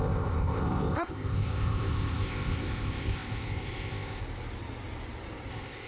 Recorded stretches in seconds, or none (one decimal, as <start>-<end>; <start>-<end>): 4.2-5.5